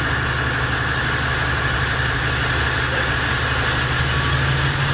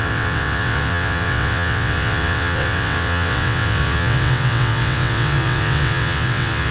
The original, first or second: first